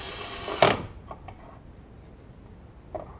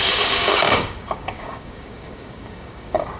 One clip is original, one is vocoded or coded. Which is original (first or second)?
first